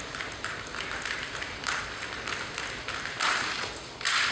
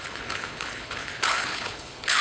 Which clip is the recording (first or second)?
first